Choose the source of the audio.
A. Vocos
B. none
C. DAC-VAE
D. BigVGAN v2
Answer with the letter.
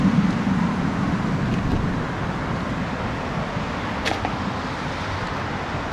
B